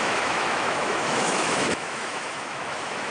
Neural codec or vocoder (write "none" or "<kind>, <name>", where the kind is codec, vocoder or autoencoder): autoencoder, DAC-VAE